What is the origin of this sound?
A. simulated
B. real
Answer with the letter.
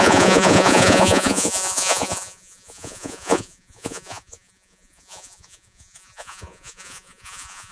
A